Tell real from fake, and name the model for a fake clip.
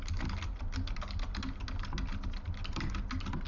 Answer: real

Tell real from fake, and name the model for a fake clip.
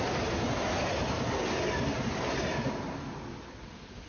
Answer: real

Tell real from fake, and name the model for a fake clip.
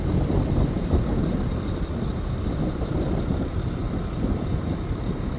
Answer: fake, vocoder, BigVGAN v2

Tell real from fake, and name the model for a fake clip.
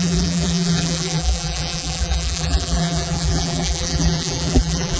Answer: fake, vocoder, BigVGAN v2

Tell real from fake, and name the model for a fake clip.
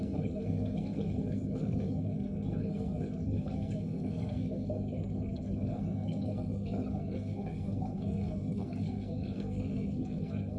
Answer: fake, codec, SNAC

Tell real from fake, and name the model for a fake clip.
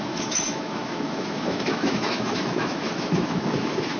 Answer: fake, autoencoder, DAC-VAE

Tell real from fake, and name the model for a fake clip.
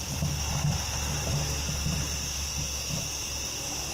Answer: real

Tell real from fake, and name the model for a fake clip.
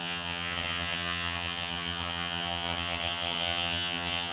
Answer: fake, vocoder, HiFi-GAN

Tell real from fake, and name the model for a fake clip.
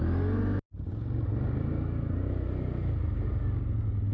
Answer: real